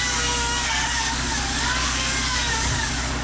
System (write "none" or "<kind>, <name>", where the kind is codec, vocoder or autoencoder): codec, DAC